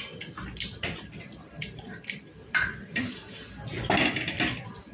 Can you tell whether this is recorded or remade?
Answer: recorded